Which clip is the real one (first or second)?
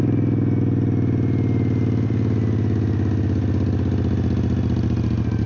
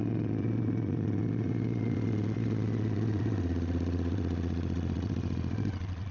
first